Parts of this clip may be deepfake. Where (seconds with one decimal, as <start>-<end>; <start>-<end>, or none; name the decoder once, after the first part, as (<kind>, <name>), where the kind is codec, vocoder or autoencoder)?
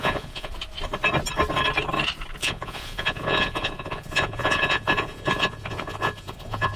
0.0-0.5 (vocoder, Vocos); 2.4-6.8